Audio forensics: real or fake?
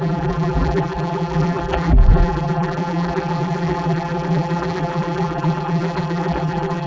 fake